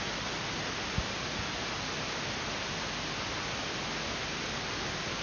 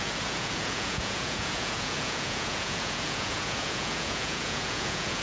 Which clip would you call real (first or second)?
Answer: first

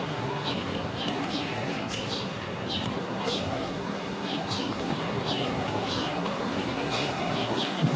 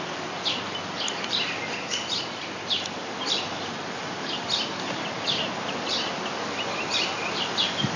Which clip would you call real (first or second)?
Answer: second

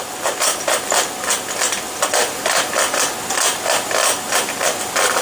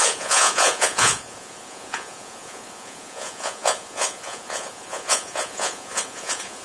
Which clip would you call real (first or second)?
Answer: first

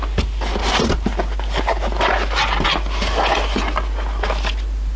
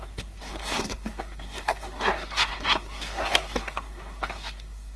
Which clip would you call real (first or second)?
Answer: first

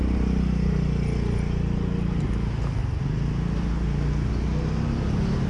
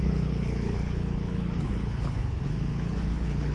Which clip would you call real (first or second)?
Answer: first